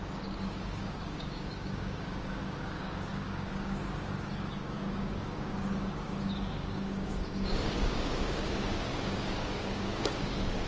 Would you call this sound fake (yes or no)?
yes